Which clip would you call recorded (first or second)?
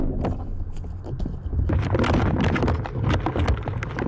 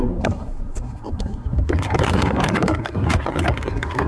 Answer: first